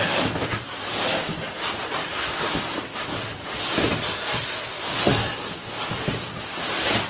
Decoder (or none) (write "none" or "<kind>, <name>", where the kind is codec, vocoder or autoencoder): none